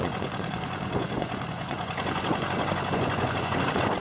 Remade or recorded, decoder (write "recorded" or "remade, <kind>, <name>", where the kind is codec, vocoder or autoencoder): remade, vocoder, Vocos